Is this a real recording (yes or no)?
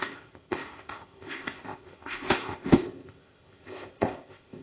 no